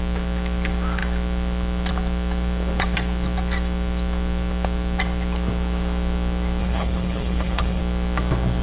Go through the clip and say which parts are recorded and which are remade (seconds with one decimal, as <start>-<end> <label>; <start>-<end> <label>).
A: 0.0-6.6 recorded; 6.6-7.8 remade; 7.8-8.6 recorded